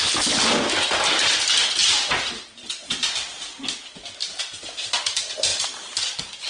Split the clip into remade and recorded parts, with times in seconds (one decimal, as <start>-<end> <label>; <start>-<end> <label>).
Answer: 0.0-5.5 remade; 5.5-6.5 recorded